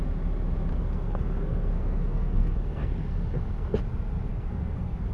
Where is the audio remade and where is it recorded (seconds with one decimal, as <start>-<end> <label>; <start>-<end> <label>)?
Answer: 0.0-0.7 recorded; 0.7-3.8 remade; 3.8-4.3 recorded; 4.3-5.1 remade